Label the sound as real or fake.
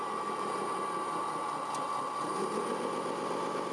real